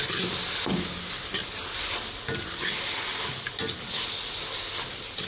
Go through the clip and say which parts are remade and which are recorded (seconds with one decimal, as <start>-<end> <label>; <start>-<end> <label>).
0.0-5.3 recorded